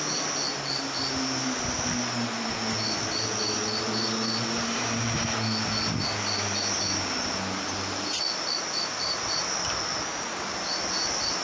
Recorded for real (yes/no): yes